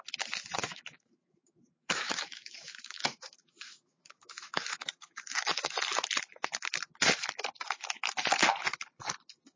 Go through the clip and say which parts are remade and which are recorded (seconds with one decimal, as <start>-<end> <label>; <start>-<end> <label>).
0.0-0.6 recorded; 0.6-5.8 remade; 5.8-9.6 recorded